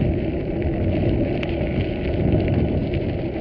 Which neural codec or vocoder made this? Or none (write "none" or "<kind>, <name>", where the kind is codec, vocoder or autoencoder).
none